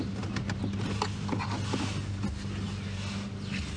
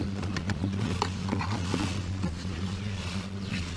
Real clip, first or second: first